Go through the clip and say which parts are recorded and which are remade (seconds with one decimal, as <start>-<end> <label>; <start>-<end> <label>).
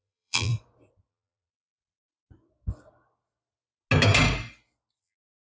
0.0-0.5 remade; 0.5-1.1 recorded; 1.1-1.7 remade; 1.7-5.0 recorded; 5.0-5.5 remade